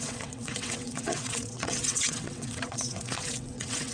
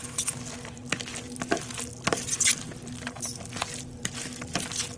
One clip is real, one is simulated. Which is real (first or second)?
second